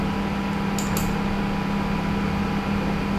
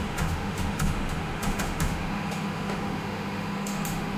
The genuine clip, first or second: first